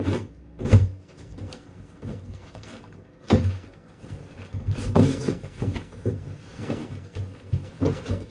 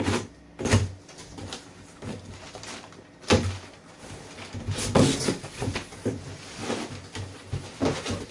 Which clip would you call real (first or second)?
second